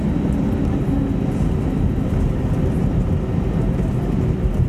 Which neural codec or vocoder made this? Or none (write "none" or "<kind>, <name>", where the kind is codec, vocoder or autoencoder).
none